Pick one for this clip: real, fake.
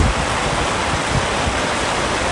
real